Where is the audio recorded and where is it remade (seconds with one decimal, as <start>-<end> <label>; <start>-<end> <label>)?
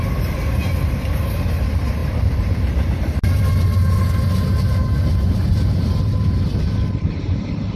0.0-2.0 recorded; 2.0-3.4 remade; 3.4-7.8 recorded